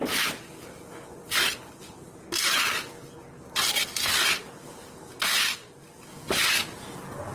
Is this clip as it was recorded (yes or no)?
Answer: yes